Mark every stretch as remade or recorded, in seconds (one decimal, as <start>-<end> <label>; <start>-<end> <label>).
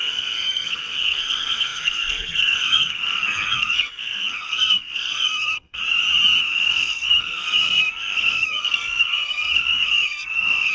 0.0-5.8 remade; 5.8-6.4 recorded; 6.4-10.7 remade